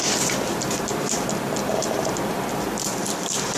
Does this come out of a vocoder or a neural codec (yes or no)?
yes